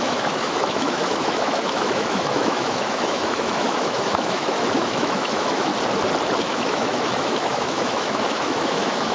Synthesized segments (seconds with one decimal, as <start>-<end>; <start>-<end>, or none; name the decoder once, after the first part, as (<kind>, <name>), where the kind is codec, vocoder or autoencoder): 0.0-5.7 (autoencoder, DAC-VAE); 6.4-9.1